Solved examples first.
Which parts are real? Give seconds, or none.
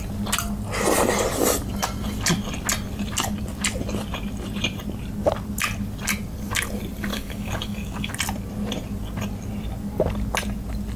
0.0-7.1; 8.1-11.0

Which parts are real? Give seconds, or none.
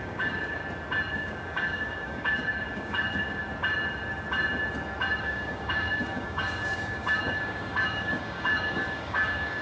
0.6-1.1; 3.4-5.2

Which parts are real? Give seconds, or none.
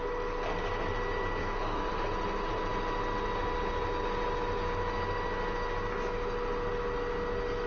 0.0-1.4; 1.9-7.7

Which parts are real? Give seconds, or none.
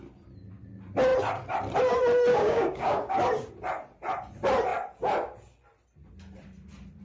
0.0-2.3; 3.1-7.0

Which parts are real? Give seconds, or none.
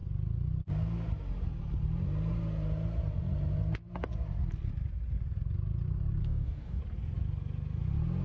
0.0-6.2; 6.8-8.2